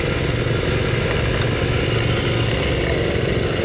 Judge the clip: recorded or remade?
recorded